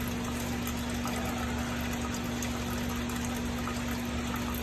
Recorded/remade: recorded